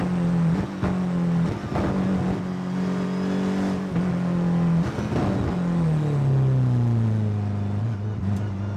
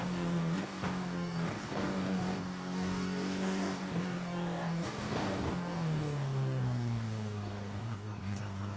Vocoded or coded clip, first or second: second